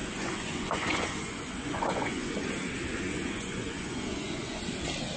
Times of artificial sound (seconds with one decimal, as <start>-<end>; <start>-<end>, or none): 0.0-2.5; 2.9-4.6